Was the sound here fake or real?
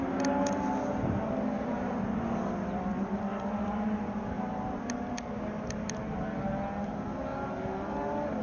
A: real